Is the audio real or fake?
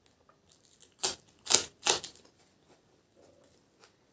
real